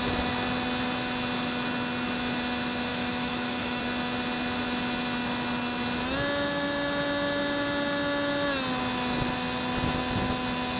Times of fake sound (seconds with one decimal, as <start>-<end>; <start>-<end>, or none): 2.9-3.8